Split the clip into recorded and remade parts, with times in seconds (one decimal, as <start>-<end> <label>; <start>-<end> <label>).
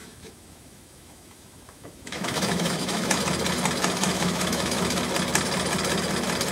0.0-3.2 remade; 3.2-4.0 recorded; 4.0-5.0 remade; 5.0-6.5 recorded